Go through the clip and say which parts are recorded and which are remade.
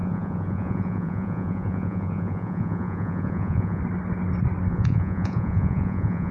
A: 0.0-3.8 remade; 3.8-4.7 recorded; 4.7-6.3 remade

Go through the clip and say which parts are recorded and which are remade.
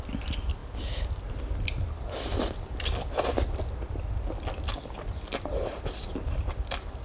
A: 0.0-7.0 recorded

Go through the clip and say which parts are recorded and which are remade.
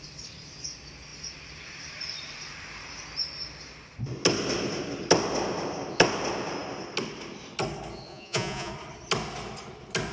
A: 0.0-8.1 recorded; 8.1-8.7 remade; 8.7-10.1 recorded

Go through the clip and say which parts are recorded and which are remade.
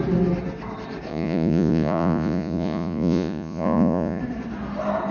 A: 0.0-1.1 recorded; 1.1-4.2 remade; 4.2-5.1 recorded